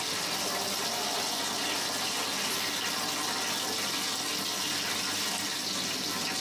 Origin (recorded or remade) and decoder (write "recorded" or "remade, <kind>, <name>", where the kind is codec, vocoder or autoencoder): recorded